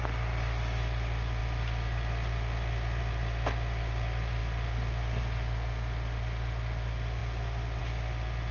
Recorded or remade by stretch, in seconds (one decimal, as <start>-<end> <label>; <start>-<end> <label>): 0.0-8.5 recorded